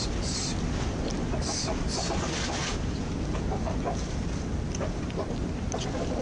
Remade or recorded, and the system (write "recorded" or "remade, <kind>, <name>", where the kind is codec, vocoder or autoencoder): recorded